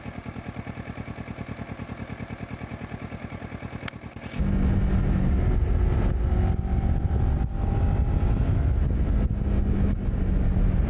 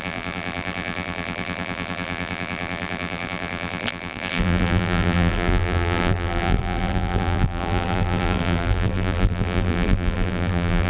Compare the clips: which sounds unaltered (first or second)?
first